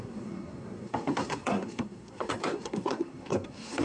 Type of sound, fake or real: fake